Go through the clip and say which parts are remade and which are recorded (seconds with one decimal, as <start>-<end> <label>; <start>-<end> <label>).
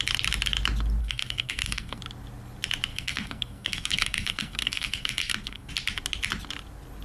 0.0-1.0 recorded; 1.0-2.0 remade; 2.0-2.9 recorded; 2.9-5.7 remade; 5.7-7.0 recorded